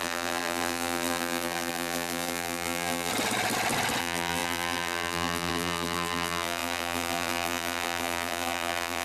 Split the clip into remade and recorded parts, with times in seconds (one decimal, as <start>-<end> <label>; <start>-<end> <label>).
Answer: 0.0-3.1 remade; 3.1-4.0 recorded; 4.0-9.0 remade